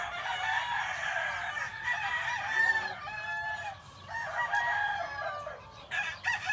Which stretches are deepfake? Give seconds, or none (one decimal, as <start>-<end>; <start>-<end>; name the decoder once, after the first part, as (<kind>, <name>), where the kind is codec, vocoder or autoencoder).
none